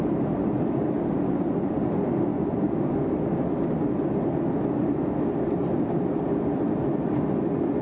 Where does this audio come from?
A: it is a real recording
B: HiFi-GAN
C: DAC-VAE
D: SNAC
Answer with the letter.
A